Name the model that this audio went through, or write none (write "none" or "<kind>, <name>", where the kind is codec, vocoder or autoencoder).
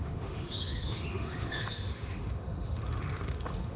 autoencoder, DAC-VAE